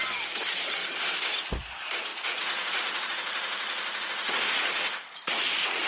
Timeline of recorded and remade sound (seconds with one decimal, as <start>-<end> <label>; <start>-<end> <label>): 0.0-2.1 recorded; 2.1-5.9 remade